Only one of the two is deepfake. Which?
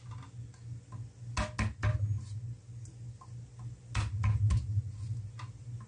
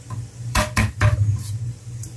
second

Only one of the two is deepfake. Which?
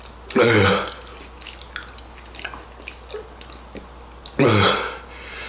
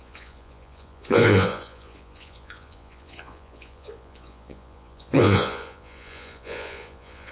second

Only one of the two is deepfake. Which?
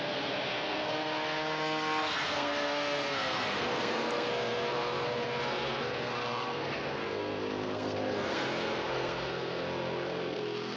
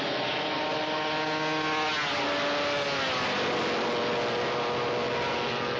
first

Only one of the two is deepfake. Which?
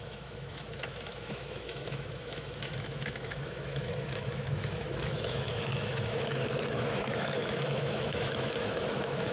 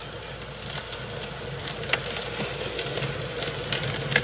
first